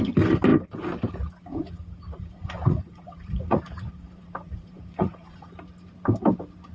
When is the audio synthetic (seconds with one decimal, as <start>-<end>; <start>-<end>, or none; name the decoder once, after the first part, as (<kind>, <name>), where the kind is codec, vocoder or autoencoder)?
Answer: 1.5-5.5 (vocoder, Vocos)